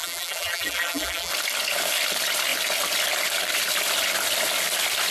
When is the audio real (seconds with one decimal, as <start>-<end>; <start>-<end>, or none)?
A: 1.3-5.1